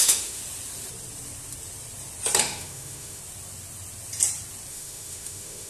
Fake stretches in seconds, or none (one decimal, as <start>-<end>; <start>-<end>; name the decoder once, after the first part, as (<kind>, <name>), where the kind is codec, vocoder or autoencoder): 0.0-0.4 (autoencoder, DAC-VAE); 2.4-3.2; 4.7-5.7